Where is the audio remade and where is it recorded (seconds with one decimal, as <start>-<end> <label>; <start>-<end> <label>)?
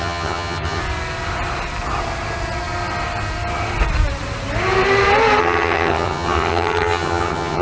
0.0-0.8 remade; 0.8-5.4 recorded; 5.4-7.6 remade